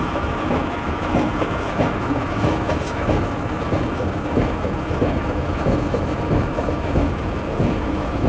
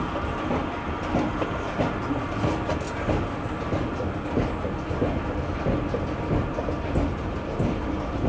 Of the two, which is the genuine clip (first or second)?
second